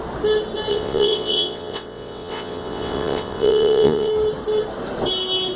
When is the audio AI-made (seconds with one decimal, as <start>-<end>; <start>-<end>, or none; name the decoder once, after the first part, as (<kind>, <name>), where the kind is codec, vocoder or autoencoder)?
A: 0.7-4.1 (vocoder, WaveNeXt)